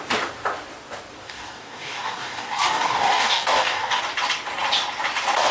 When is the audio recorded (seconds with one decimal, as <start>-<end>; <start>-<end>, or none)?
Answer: 0.0-1.2; 4.0-5.5